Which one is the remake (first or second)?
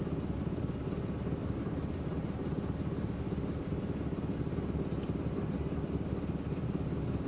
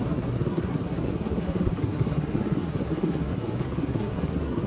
second